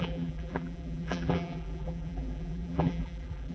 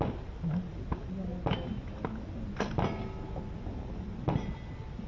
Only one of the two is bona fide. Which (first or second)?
second